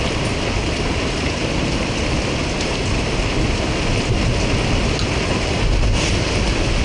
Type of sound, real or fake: real